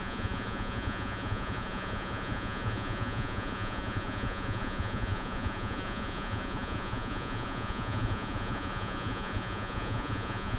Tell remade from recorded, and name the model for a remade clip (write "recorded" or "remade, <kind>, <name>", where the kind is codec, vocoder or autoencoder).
remade, vocoder, Vocos